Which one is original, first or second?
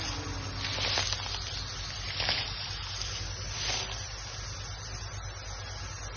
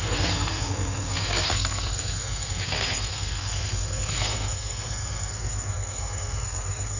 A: first